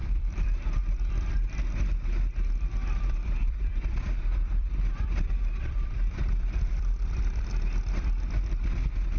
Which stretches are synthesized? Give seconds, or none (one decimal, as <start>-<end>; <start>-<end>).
0.0-1.6; 3.2-7.5